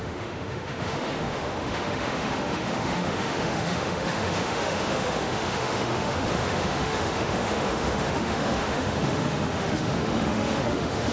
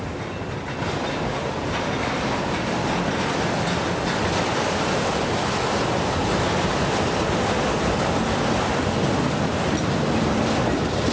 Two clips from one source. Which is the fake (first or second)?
first